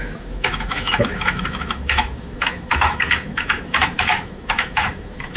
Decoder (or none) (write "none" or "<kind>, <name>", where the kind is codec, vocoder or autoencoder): autoencoder, DAC-VAE